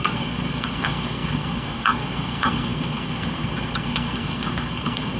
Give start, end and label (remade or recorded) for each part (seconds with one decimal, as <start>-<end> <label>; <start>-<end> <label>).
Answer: 0.0-5.2 remade